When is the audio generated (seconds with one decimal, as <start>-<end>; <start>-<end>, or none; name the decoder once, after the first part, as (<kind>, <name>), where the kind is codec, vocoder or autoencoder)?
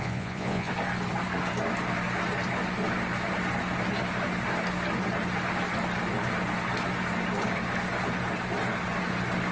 0.0-0.7 (vocoder, Vocos)